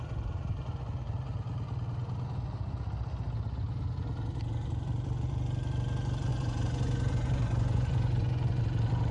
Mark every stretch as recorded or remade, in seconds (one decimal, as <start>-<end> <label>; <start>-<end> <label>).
0.0-6.3 recorded; 6.3-8.6 remade; 8.6-9.1 recorded